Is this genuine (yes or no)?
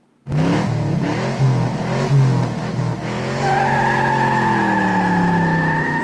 yes